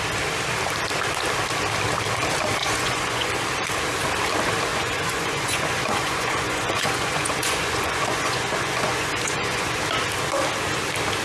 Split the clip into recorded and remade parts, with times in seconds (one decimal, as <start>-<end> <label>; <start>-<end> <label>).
0.0-2.6 recorded; 2.6-3.3 remade; 3.3-4.7 recorded; 4.7-9.8 remade; 9.8-11.2 recorded